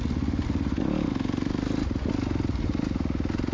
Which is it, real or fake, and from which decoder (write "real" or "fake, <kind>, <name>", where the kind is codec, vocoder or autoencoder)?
real